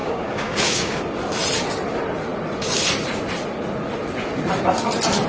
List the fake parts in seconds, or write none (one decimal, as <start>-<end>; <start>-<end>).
0.0-1.0